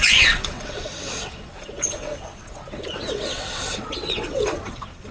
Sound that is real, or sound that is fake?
fake